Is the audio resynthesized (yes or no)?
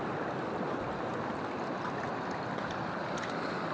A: no